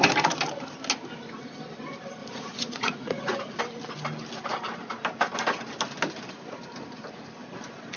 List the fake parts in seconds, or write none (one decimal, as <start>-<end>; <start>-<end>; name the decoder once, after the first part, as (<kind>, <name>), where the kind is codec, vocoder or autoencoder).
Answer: 2.2-3.6 (vocoder, Vocos)